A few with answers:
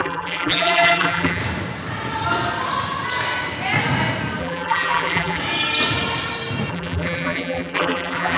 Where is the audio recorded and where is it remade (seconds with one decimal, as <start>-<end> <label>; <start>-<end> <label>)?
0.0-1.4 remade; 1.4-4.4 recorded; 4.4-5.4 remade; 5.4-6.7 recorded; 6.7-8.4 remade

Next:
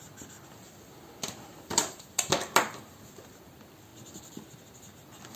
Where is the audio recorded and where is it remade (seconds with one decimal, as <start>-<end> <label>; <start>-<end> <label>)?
0.0-5.4 recorded

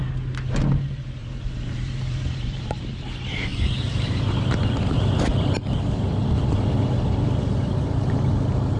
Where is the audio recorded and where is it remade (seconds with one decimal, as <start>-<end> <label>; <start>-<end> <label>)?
0.0-1.2 recorded; 1.2-2.8 remade; 2.8-3.5 recorded; 3.5-4.3 remade; 4.3-8.8 recorded

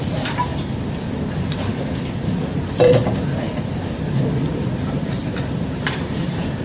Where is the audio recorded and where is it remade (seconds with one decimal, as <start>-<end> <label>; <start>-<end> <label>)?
0.0-0.5 remade; 0.5-4.5 recorded; 4.5-6.6 remade

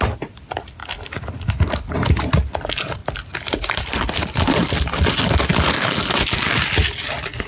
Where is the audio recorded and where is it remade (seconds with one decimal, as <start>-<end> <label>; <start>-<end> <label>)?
0.0-3.0 recorded; 3.0-5.3 remade; 5.3-7.5 recorded

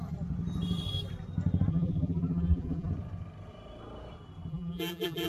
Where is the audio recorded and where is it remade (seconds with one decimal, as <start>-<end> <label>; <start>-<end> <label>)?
0.0-1.7 recorded; 1.7-2.9 remade; 2.9-4.5 recorded; 4.5-5.3 remade

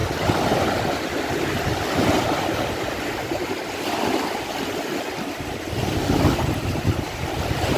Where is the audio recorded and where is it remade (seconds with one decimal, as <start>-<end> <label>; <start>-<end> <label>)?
0.0-7.8 recorded